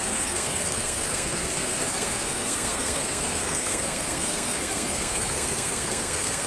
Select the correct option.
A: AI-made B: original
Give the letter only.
A